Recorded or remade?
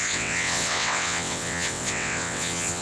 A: remade